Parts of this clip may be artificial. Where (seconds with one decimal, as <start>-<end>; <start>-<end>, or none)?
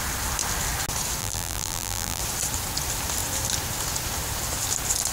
1.2-2.2